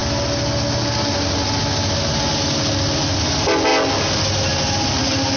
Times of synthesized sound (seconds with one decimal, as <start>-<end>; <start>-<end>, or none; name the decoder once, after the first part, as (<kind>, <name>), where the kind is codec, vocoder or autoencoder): none